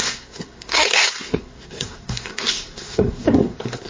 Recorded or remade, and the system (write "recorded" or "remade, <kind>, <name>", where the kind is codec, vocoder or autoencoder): remade, codec, SNAC